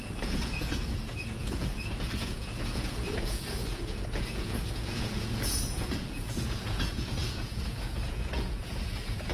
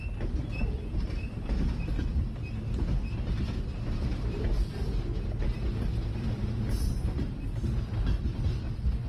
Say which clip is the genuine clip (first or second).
second